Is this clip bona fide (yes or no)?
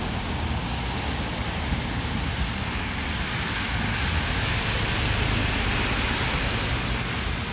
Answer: yes